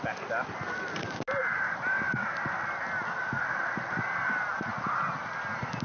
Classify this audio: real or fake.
real